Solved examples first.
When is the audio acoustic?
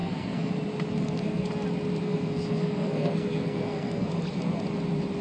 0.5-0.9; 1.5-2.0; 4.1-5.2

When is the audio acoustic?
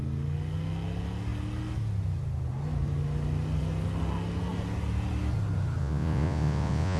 0.0-5.8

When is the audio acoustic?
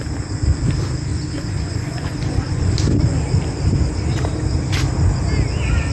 0.0-1.1; 2.7-5.9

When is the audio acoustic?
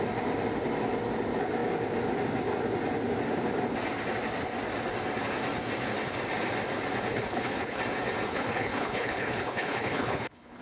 0.0-7.1; 7.8-8.3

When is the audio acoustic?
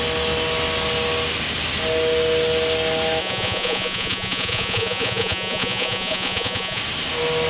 0.0-3.2; 6.8-7.5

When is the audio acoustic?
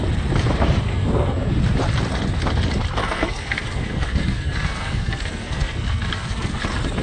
0.0-0.9; 1.5-3.0; 6.6-7.0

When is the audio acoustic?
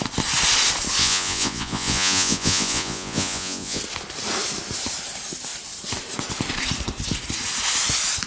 0.0-1.0; 3.8-8.3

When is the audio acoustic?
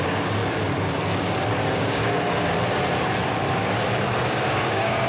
0.4-1.6; 2.0-4.2